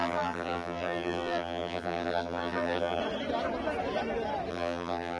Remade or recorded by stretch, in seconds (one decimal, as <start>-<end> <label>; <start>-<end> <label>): 0.0-3.0 remade; 3.0-4.5 recorded; 4.5-5.2 remade